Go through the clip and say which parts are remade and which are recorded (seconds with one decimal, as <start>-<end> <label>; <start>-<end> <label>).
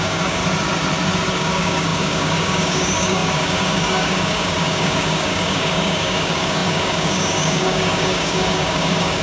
0.0-0.4 remade; 0.4-1.3 recorded; 1.3-9.2 remade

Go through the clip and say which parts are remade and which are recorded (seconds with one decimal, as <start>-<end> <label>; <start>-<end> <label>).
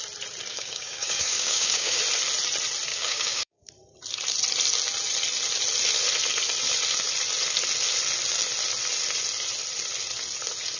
0.0-0.5 recorded; 0.5-2.0 remade; 2.0-2.9 recorded; 2.9-3.7 remade; 3.7-10.8 recorded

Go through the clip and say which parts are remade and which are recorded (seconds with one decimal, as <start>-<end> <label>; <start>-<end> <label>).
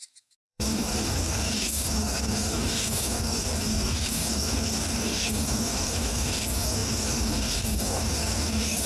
0.0-8.9 remade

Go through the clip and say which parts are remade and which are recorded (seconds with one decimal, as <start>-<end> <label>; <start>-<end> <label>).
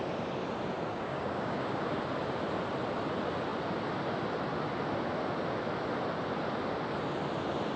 0.0-0.9 recorded; 0.9-2.0 remade; 2.0-7.8 recorded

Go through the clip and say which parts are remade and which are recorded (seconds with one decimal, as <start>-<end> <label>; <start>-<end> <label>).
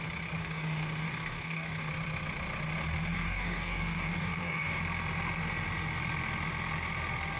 0.0-0.4 recorded; 0.4-1.9 remade; 1.9-3.1 recorded; 3.1-4.8 remade; 4.8-7.4 recorded